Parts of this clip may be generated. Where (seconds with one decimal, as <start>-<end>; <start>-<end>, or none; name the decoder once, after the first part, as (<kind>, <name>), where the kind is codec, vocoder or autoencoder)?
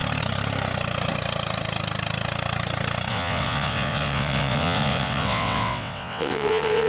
3.1-6.9 (vocoder, WaveNeXt)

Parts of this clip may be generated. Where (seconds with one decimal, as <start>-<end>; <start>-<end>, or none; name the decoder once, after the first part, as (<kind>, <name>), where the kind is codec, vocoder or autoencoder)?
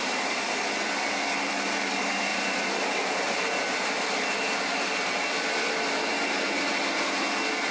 none